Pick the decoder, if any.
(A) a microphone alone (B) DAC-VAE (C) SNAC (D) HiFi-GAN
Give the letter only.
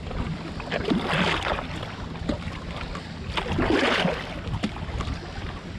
A